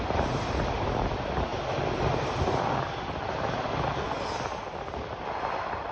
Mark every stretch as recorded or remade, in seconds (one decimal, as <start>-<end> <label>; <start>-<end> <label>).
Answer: 0.0-5.9 recorded